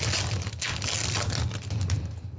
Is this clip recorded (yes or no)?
yes